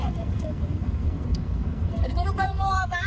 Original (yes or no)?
no